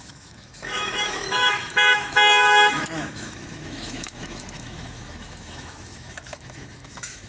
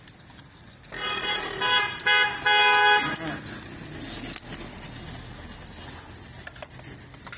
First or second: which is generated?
first